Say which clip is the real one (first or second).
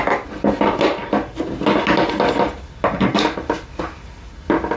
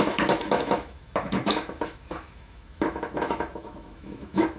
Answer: first